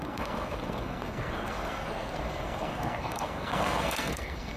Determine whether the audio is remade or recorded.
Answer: remade